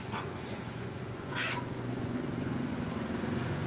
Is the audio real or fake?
fake